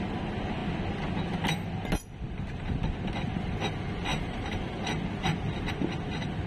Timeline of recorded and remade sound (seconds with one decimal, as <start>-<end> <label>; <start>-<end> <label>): 0.0-4.1 recorded; 4.1-4.6 remade; 4.6-6.5 recorded